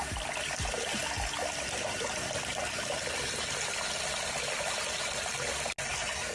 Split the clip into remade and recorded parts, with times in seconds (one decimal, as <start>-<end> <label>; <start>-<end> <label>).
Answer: 0.0-1.0 recorded; 1.0-4.8 remade; 4.8-6.3 recorded